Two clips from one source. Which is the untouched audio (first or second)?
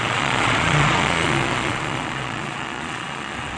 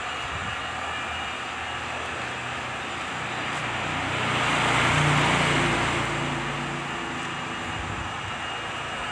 second